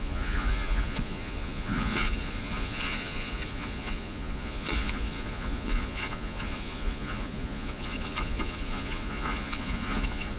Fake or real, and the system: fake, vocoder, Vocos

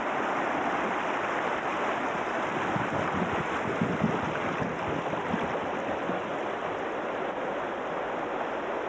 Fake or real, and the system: real